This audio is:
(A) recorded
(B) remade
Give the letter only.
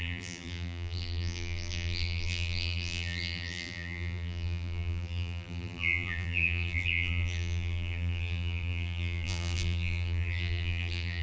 B